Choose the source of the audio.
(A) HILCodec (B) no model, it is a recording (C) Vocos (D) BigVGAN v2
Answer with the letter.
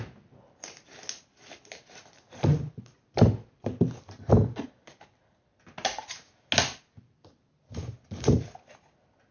B